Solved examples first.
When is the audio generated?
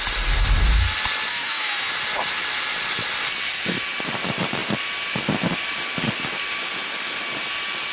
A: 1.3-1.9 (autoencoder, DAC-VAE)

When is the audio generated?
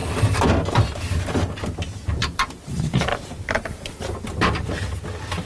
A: 2.2-3.4 (vocoder, BigVGAN v2)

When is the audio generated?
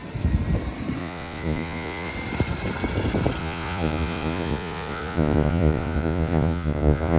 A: 1.0-2.1 (vocoder, Vocos); 3.4-7.2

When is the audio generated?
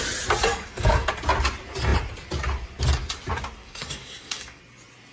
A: 0.5-1.1 (codec, DAC); 3.6-4.6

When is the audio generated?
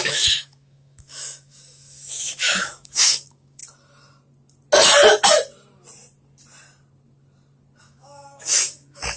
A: 0.0-3.6 (autoencoder, DAC-VAE); 7.8-9.2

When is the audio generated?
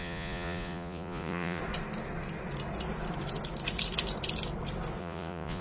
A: 0.0-1.6 (vocoder, Vocos); 5.0-5.6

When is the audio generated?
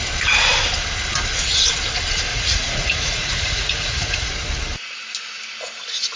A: 2.3-4.3 (vocoder, Vocos)